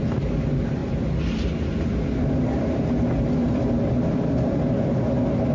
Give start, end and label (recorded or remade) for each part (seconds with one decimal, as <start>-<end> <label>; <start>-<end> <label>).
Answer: 0.0-5.5 recorded